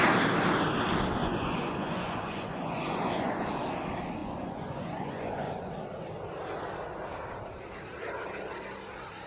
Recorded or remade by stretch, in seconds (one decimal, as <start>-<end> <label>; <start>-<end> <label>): 0.0-1.2 recorded; 1.2-3.5 remade; 3.5-4.2 recorded; 4.2-5.7 remade; 5.7-9.3 recorded